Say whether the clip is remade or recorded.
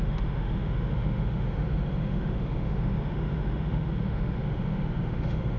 remade